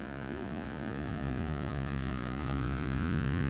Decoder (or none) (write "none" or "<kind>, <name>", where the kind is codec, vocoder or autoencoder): vocoder, Vocos